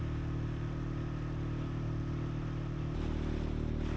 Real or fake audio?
real